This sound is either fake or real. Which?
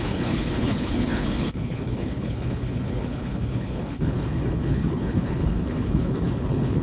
fake